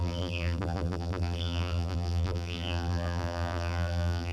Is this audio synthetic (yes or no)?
yes